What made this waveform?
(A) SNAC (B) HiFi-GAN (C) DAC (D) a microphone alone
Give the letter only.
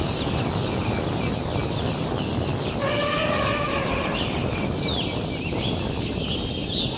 D